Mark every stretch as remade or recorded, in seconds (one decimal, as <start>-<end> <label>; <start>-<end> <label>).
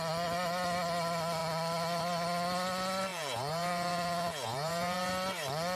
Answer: 0.0-3.1 recorded; 3.1-5.1 remade; 5.1-5.8 recorded